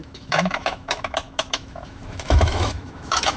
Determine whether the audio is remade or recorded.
remade